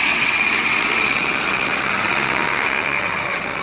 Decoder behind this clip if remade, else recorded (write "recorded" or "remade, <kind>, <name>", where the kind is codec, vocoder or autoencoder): remade, vocoder, WaveNeXt